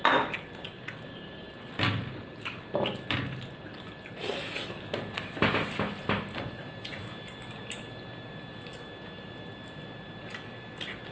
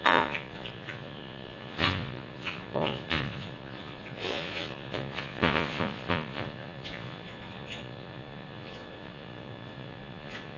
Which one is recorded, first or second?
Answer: first